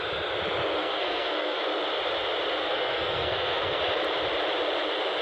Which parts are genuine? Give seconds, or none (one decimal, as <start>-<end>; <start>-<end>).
0.0-0.8; 1.6-2.6; 3.8-5.2